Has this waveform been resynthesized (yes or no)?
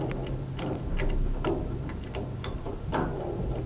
no